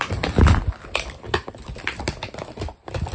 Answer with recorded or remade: remade